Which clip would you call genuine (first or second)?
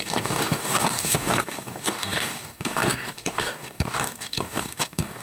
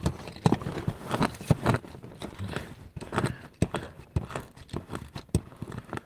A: second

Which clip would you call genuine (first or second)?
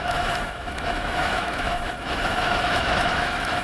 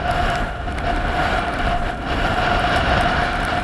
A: second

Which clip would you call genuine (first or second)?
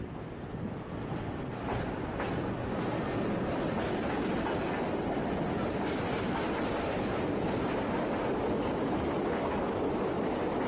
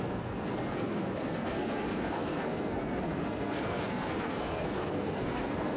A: first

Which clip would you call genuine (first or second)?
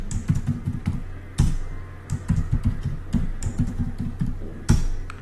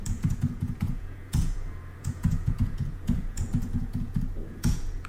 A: first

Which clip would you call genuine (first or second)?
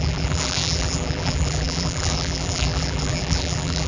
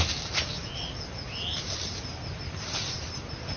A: second